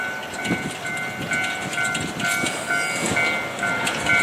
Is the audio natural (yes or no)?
yes